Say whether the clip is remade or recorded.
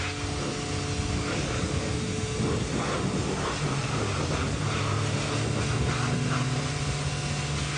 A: recorded